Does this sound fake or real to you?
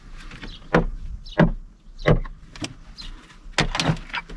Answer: real